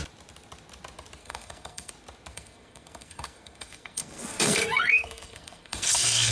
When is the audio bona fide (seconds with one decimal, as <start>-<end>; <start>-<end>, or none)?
0.0-1.2; 1.9-2.3